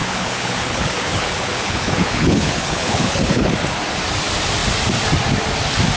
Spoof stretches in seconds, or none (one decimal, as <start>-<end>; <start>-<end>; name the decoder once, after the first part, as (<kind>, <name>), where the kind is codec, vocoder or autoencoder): 0.0-3.5 (codec, HILCodec)